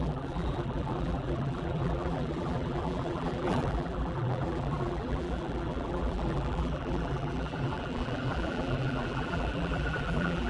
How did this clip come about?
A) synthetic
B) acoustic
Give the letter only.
A